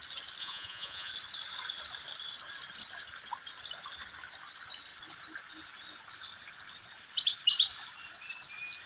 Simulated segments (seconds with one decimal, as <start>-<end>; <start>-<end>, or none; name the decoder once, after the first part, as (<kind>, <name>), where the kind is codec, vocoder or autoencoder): 0.4-1.1 (vocoder, Vocos)